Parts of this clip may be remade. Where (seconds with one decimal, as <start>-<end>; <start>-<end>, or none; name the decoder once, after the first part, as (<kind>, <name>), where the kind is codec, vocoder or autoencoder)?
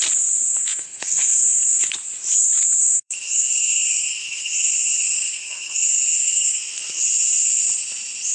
0.5-1.9 (codec, SNAC); 2.8-7.0